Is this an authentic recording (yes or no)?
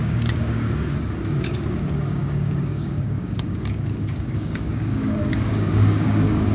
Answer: no